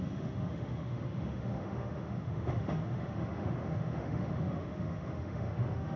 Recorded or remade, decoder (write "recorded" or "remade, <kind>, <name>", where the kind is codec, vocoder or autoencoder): remade, autoencoder, DAC-VAE